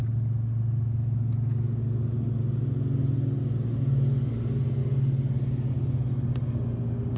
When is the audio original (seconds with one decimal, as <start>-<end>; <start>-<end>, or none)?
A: 0.0-7.2